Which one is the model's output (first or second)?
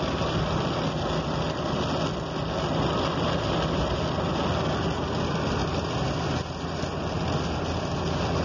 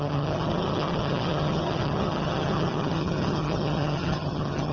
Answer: second